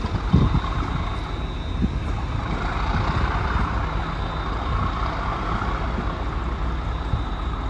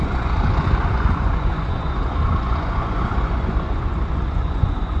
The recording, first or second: first